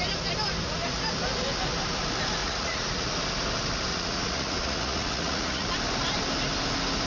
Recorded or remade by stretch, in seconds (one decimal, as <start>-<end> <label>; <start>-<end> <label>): 0.0-2.4 recorded; 2.4-3.1 remade; 3.1-3.9 recorded; 3.9-5.7 remade; 5.7-7.1 recorded